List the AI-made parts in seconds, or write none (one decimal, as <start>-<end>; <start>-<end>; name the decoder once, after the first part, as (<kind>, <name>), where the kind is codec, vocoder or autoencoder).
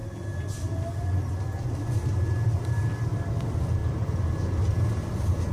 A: none